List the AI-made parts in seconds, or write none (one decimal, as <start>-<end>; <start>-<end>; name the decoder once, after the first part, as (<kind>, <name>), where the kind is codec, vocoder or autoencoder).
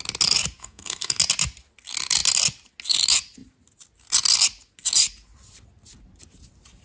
0.6-1.2 (codec, SNAC)